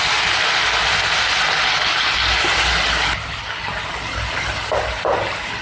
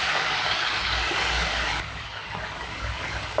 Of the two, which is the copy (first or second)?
second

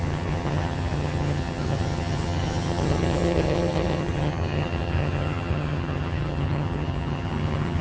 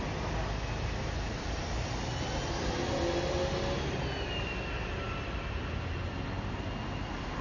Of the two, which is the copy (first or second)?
first